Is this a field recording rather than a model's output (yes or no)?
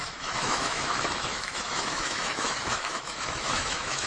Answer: no